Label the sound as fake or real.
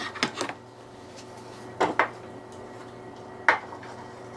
real